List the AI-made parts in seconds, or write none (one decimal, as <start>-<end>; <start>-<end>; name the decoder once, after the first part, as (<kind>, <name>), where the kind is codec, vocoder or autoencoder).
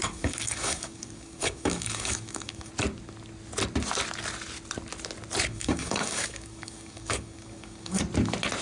0.0-2.7 (codec, DAC); 5.5-8.0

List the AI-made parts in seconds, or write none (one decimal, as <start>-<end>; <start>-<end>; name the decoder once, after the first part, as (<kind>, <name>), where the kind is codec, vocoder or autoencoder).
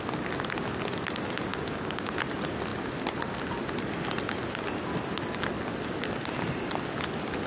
1.5-2.1 (codec, DAC)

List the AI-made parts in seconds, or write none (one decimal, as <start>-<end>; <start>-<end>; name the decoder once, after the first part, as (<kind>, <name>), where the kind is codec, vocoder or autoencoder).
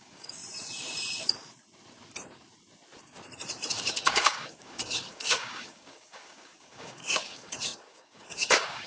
0.0-0.4 (codec, DAC); 3.7-8.9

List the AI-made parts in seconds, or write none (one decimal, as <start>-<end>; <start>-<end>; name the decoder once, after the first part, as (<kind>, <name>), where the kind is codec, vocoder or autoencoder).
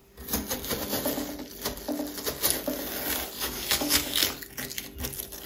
3.3-4.2 (codec, DAC)